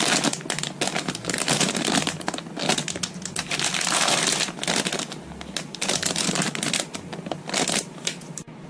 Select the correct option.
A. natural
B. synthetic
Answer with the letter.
A